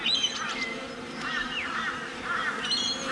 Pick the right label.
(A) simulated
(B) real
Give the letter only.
B